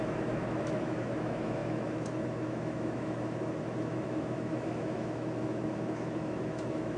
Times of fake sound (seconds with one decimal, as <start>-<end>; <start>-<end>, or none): 0.0-7.0